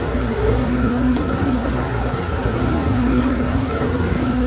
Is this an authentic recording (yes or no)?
no